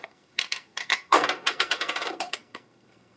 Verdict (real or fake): fake